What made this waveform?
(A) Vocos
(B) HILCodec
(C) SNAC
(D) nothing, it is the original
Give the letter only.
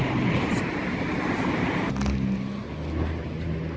D